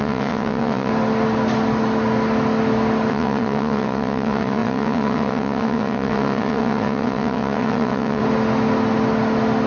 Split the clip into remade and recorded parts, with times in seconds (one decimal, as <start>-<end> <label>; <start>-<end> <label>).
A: 0.0-0.9 remade; 0.9-3.1 recorded; 3.1-8.2 remade; 8.2-9.7 recorded